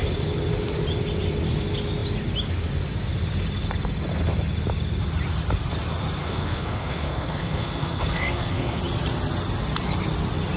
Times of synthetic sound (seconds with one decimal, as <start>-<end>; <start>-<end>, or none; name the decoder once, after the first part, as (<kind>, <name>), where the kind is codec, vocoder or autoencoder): 6.2-8.8 (codec, SNAC)